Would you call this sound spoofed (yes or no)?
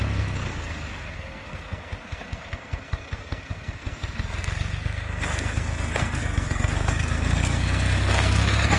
yes